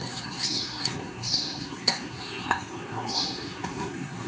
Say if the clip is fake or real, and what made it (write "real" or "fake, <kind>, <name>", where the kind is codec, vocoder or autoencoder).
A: fake, codec, SNAC